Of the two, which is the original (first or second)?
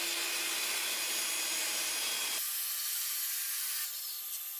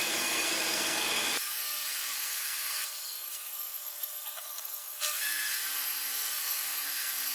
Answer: first